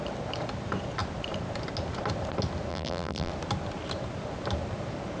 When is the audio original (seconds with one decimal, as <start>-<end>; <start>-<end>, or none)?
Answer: 0.0-2.7; 3.3-5.2